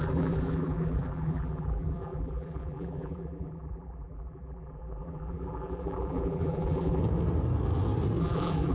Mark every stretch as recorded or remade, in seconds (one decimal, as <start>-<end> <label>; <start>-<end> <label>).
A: 0.0-7.0 remade; 7.0-8.2 recorded; 8.2-8.7 remade